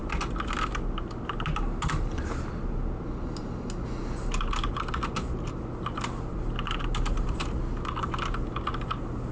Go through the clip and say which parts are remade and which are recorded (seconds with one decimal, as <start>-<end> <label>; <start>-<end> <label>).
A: 0.0-9.3 recorded